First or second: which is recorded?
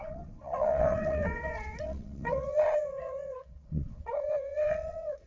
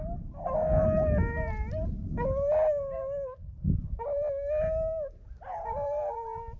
second